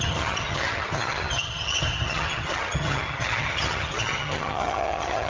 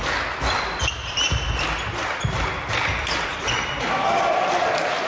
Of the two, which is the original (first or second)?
second